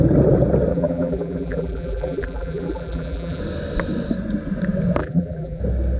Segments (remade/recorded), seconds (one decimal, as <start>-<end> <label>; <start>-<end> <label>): 0.0-0.7 recorded; 0.7-3.4 remade; 3.4-5.0 recorded; 5.0-5.6 remade; 5.6-6.0 recorded